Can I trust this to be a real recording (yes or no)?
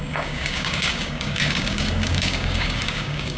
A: no